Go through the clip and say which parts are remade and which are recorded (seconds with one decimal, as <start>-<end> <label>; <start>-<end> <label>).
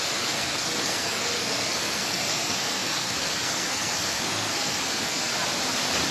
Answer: 0.0-5.3 remade; 5.3-6.1 recorded